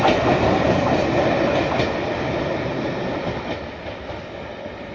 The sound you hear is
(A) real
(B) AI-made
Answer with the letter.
A